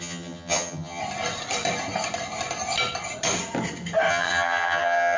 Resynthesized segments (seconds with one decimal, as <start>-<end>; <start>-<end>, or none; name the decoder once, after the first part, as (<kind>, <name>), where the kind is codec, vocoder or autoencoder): 0.0-1.0 (vocoder, HiFi-GAN); 4.1-5.2